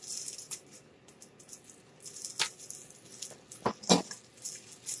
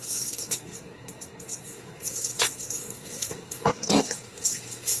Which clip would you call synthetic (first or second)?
second